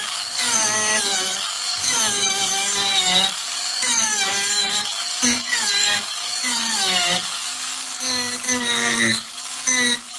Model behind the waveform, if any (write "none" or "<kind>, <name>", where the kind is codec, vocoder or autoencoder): codec, DAC